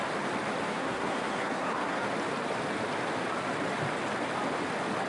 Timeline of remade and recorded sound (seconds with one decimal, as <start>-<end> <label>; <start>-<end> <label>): 0.0-0.7 recorded; 0.7-2.0 remade; 2.0-5.1 recorded